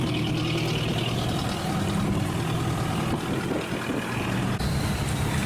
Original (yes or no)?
yes